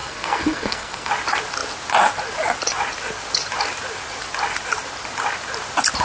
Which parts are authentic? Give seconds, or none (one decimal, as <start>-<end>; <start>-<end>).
1.1-6.0